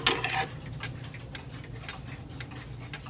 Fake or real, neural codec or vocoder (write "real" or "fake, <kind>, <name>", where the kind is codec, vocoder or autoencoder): real